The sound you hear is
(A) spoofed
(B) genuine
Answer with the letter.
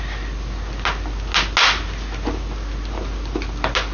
B